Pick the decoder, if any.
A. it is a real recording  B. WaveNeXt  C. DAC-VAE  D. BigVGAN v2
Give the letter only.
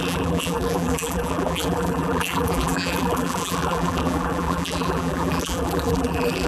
D